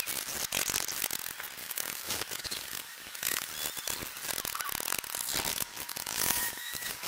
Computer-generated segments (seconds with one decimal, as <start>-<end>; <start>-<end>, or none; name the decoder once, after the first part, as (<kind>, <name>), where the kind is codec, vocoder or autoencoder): 1.6-3.5 (codec, DAC); 5.5-7.1